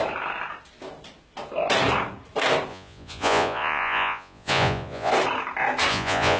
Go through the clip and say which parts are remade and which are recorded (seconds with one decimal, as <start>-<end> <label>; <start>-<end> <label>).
0.0-2.7 recorded; 2.7-5.1 remade; 5.1-5.9 recorded; 5.9-6.4 remade